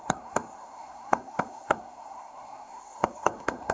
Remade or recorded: remade